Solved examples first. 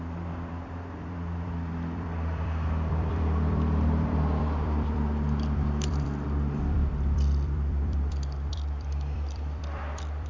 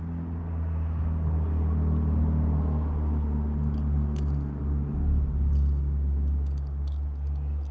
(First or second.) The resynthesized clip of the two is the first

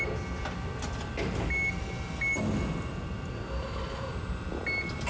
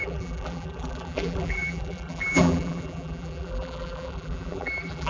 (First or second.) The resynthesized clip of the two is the second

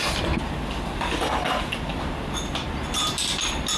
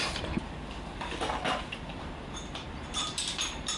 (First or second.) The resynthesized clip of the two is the second